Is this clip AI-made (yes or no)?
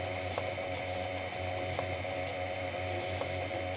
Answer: no